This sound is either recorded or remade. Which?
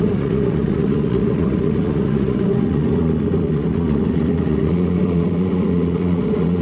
remade